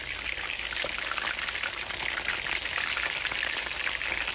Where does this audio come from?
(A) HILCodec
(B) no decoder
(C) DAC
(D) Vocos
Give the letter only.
B